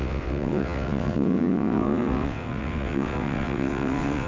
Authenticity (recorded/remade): remade